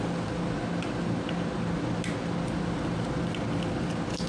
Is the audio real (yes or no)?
yes